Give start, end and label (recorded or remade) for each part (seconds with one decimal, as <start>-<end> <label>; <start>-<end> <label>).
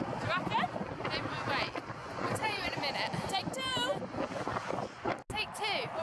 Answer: 0.0-2.0 recorded; 2.0-2.7 remade; 2.7-6.0 recorded